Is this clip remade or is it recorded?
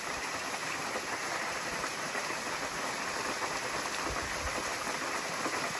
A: recorded